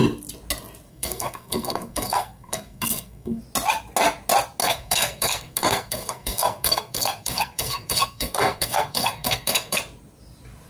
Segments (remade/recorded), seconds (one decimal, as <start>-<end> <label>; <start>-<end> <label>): 0.0-0.9 recorded; 0.9-3.4 remade; 3.4-4.6 recorded; 4.6-9.8 remade; 9.8-10.7 recorded